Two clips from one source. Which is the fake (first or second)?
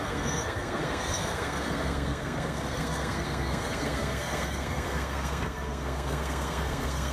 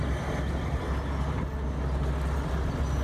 first